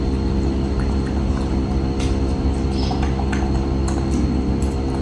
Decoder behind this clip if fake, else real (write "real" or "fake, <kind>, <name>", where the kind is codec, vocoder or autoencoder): real